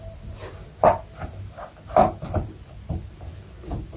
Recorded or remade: recorded